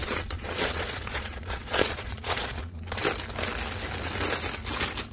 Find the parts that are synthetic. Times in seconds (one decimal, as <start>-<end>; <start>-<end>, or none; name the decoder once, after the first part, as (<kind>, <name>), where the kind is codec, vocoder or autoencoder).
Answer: 0.0-3.0 (vocoder, Vocos)